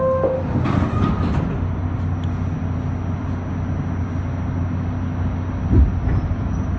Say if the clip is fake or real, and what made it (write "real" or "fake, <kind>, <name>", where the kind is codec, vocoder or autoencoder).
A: real